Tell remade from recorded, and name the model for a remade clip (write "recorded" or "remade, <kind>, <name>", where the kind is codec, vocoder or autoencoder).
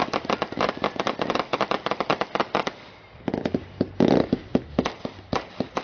recorded